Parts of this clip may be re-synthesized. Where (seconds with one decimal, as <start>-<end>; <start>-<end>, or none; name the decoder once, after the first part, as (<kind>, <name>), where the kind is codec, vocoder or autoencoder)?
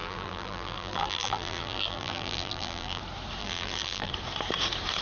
0.0-3.0 (vocoder, BigVGAN v2); 3.4-4.1